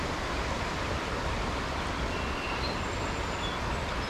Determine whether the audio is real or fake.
real